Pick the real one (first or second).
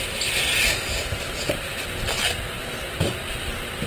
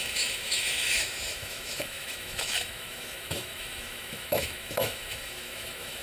first